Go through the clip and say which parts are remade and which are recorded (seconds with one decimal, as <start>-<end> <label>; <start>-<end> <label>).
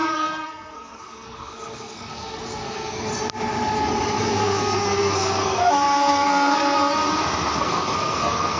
0.0-3.1 remade; 3.1-4.2 recorded; 4.2-6.8 remade; 6.8-7.6 recorded; 7.6-8.6 remade